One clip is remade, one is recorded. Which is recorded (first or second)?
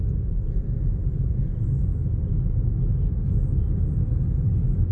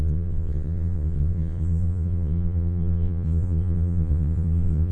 first